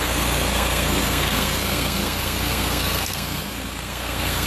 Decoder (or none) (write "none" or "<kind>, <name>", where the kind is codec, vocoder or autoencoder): codec, SNAC